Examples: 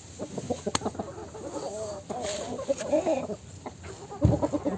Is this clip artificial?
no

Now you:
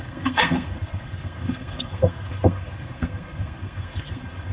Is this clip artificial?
yes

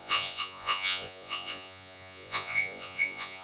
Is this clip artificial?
yes